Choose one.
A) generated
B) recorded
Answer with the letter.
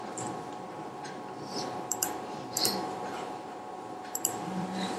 A